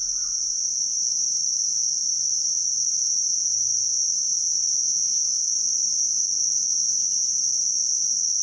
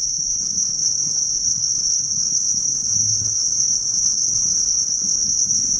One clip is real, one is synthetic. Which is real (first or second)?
first